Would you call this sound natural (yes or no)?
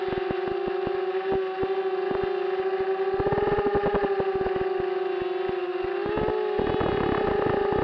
yes